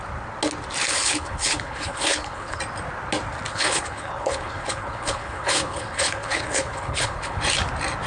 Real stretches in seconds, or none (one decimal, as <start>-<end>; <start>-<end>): 0.0-0.9; 2.6-3.5; 7.4-8.1